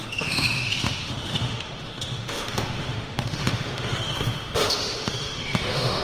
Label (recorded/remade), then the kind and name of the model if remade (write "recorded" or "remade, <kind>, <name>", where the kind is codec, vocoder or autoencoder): remade, autoencoder, DAC-VAE